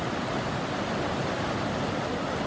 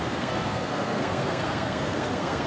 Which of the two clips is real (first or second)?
first